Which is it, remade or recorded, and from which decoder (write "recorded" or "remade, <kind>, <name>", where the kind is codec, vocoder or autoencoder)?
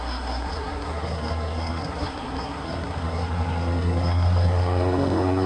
remade, codec, SNAC